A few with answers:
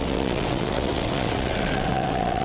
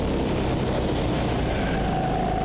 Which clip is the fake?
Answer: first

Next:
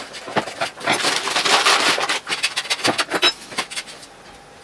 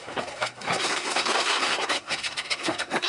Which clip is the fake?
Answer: second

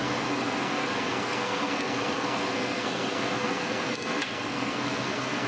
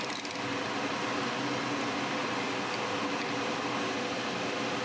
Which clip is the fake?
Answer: first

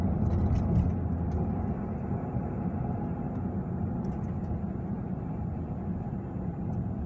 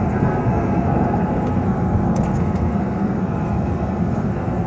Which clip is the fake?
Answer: second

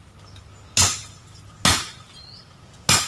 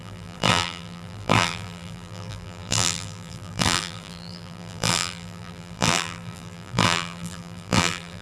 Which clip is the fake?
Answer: second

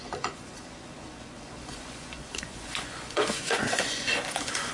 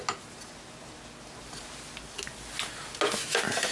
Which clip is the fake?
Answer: first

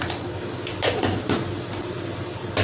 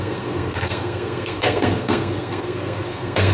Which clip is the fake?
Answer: second